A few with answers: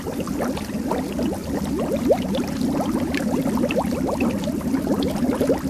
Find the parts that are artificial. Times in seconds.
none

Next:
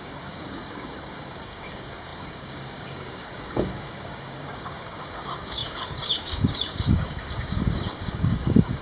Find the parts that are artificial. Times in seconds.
0.0-8.8 (codec, DAC)

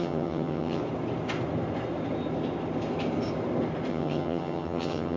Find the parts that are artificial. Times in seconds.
0.0-0.8 (vocoder, HiFi-GAN); 3.9-5.2

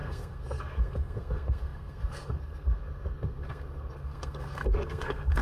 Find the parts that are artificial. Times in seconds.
0.0-5.4 (codec, SNAC)

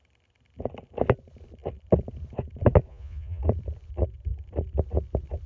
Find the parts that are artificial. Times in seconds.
2.9-3.4 (vocoder, Vocos)

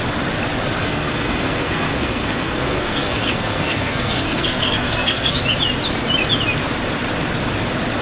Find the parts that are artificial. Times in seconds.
0.8-5.4 (codec, SNAC)